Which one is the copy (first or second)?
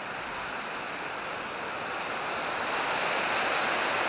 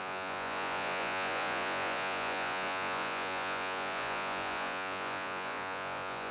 second